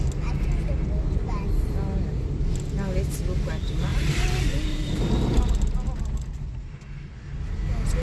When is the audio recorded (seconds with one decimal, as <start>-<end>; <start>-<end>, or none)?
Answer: 0.0-3.9; 5.1-8.0